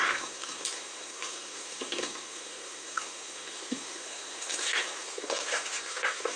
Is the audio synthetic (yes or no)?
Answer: yes